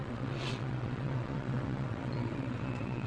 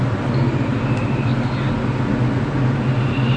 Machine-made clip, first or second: first